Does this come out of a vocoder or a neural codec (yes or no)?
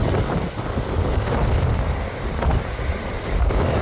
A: no